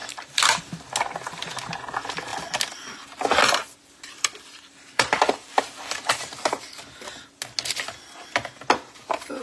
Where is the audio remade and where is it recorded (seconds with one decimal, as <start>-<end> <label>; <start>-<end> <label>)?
0.0-0.6 remade; 0.6-4.5 recorded; 4.5-6.7 remade; 6.7-9.4 recorded